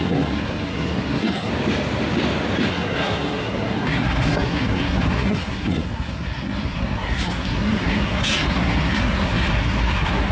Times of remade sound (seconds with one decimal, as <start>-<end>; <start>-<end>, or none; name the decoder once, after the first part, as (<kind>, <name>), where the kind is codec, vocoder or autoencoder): 0.0-1.5 (codec, SNAC); 2.7-10.3